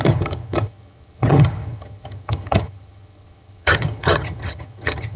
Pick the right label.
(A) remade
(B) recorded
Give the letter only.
A